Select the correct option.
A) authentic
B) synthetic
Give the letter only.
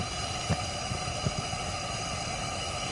A